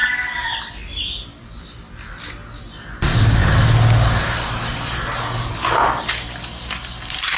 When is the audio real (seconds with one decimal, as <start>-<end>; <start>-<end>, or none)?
0.0-7.4